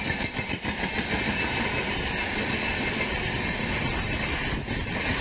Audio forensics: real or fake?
real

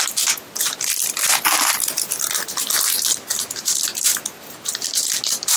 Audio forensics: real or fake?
real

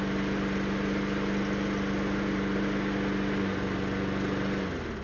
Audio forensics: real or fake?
real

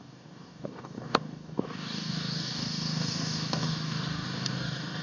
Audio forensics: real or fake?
fake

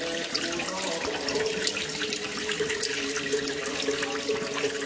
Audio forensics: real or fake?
real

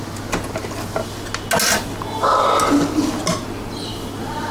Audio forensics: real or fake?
real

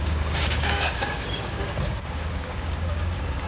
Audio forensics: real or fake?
fake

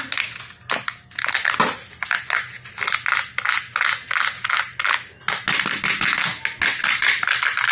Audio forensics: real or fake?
real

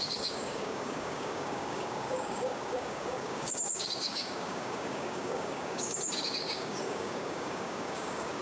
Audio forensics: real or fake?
fake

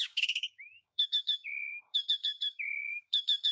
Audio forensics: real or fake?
fake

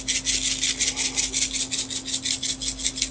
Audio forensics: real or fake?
real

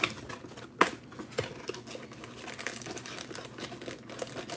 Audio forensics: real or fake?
real